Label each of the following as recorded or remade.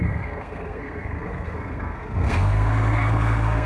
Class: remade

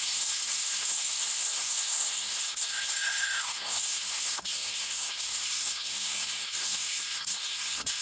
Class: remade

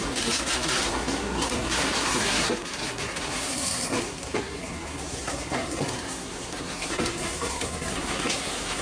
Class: remade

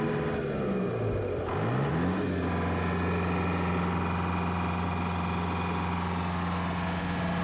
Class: recorded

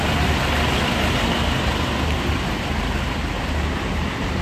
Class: recorded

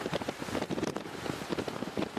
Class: recorded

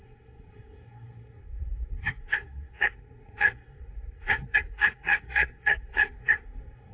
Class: remade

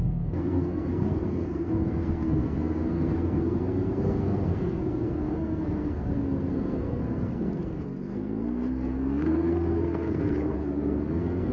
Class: remade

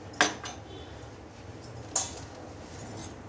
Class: recorded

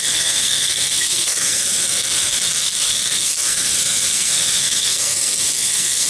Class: remade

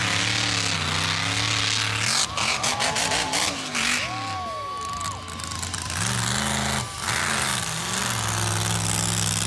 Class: recorded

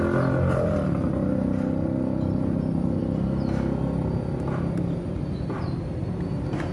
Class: recorded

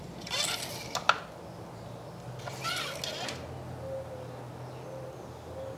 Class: recorded